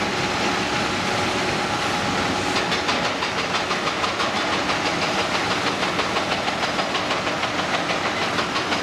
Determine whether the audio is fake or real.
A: real